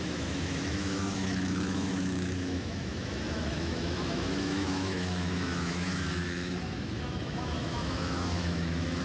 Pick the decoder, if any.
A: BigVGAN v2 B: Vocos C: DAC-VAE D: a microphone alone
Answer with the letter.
C